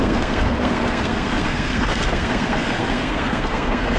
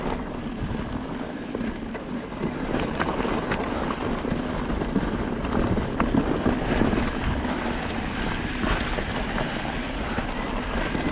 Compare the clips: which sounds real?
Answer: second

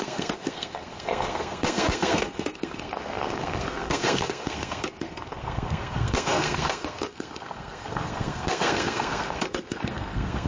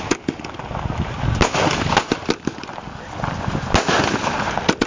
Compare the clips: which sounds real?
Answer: second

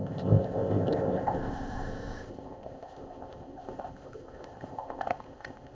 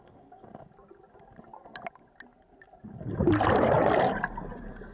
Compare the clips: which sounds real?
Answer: second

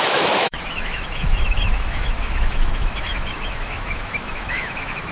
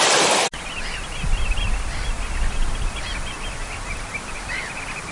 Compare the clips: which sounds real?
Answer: second